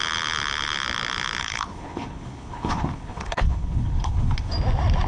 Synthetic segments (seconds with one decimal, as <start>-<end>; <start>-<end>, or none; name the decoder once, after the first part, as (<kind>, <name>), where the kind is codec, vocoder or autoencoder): 1.4-4.5 (codec, HILCodec)